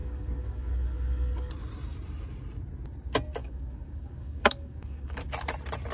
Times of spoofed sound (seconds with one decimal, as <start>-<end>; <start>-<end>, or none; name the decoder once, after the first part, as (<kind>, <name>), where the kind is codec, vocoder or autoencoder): 0.0-1.5 (codec, DAC); 3.4-5.2